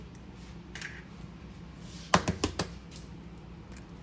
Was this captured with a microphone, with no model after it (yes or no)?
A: yes